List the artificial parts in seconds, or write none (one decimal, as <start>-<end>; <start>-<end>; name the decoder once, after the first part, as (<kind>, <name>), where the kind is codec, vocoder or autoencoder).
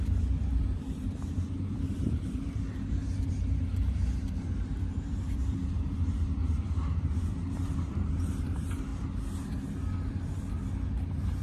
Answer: 0.0-8.9 (vocoder, BigVGAN v2); 10.5-11.4